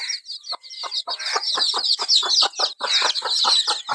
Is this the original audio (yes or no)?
yes